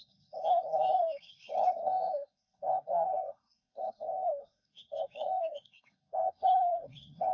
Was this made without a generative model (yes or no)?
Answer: no